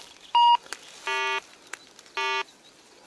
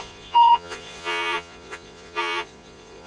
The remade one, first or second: second